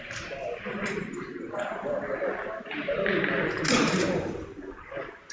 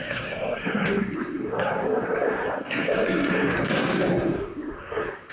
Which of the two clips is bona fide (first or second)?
first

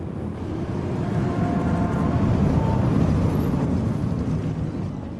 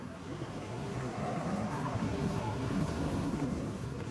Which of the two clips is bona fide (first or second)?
first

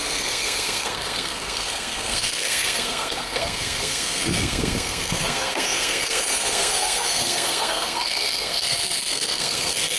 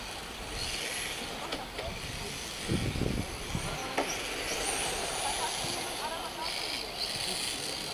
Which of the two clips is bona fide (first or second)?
second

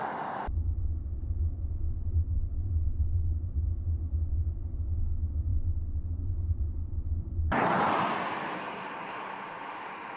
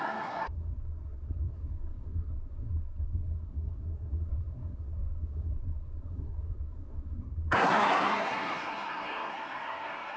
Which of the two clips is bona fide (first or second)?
first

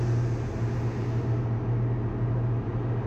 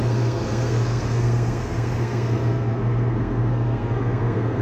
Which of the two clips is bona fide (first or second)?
first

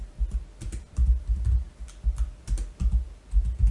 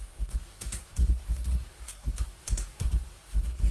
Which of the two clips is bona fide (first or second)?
first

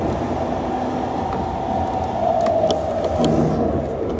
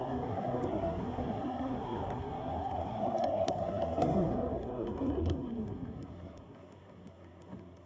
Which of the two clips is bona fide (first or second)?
first